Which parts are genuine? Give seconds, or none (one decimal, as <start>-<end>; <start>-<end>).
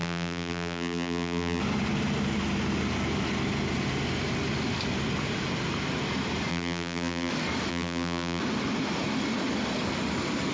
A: 1.6-6.5; 7.3-7.7; 8.4-10.5